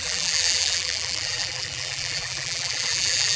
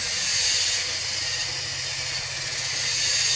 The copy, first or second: first